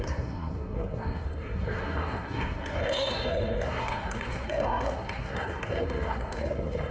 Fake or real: fake